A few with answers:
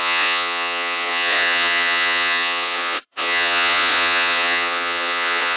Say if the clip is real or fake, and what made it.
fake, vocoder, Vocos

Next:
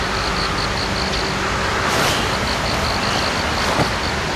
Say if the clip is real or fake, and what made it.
real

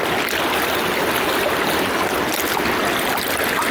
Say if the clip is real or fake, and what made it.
real